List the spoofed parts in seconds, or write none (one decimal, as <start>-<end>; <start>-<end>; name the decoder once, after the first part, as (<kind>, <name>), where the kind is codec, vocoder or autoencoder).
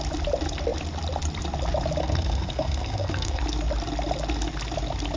2.0-3.4 (codec, SNAC)